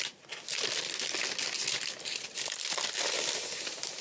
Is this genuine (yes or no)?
yes